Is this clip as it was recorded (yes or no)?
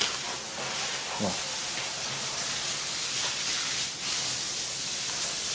yes